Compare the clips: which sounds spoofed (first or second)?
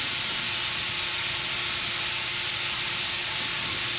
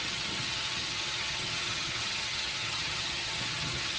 second